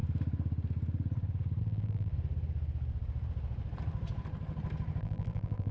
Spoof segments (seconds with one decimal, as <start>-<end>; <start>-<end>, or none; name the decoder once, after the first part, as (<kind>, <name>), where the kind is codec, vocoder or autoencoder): 1.6-2.1 (vocoder, BigVGAN v2); 5.0-5.7